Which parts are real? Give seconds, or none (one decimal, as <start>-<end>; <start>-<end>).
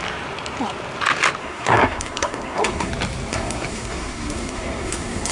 0.0-1.4; 2.9-3.3